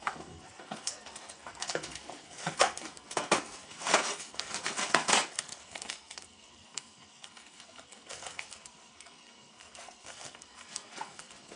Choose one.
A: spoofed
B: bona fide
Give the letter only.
A